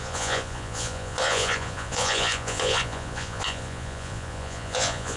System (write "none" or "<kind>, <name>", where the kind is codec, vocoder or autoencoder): vocoder, Vocos